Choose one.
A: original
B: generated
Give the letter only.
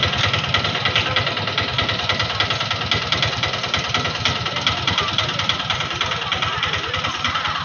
A